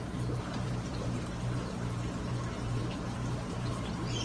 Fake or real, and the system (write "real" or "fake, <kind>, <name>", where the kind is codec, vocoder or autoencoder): fake, vocoder, BigVGAN v2